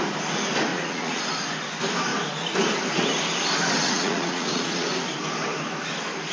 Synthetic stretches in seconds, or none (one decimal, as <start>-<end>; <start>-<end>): 0.7-1.2; 3.8-4.9